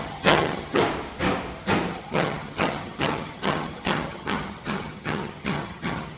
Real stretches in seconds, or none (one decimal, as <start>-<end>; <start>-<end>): 0.8-1.9

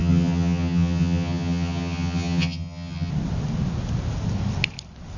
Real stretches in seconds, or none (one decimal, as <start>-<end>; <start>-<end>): 3.1-5.2